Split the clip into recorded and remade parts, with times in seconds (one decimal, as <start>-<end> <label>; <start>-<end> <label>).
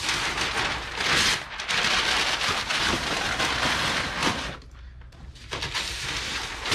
0.0-2.7 recorded; 2.7-3.4 remade; 3.4-4.2 recorded; 4.2-5.6 remade; 5.6-6.7 recorded